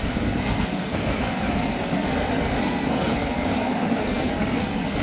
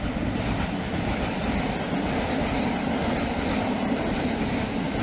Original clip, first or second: second